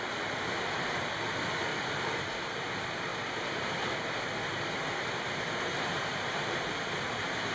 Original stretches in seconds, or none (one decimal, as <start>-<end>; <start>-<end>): 1.7-2.3; 3.1-4.7